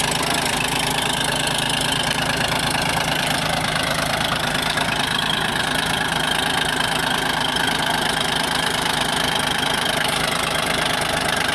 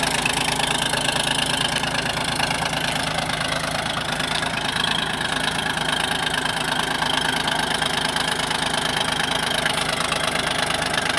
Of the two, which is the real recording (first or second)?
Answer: second